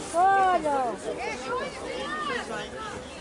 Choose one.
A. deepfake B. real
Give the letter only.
B